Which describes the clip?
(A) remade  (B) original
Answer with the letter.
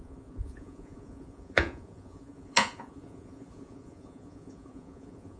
A